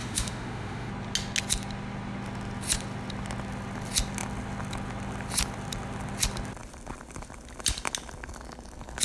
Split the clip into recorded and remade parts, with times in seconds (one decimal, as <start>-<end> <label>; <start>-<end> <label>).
0.0-0.9 remade; 0.9-9.0 recorded